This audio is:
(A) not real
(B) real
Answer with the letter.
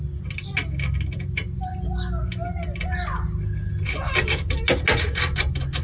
B